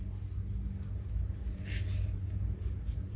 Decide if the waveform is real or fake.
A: real